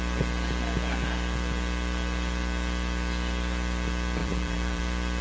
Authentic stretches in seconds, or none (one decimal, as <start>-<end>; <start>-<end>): 0.0-4.2; 4.8-5.2